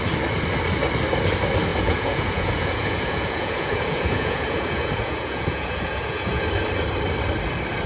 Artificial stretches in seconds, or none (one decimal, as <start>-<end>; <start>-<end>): 1.7-6.4